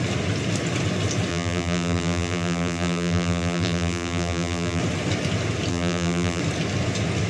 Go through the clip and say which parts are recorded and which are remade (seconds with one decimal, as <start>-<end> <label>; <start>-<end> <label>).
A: 0.0-1.3 recorded; 1.3-4.8 remade; 4.8-5.7 recorded; 5.7-6.4 remade; 6.4-7.3 recorded